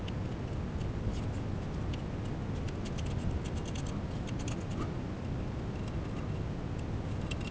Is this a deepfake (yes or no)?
no